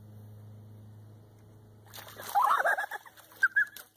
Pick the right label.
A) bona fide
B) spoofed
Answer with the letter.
A